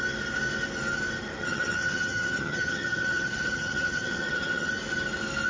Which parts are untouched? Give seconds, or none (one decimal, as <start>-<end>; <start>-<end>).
0.0-1.4; 4.7-5.5